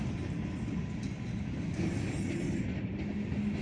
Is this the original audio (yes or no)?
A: yes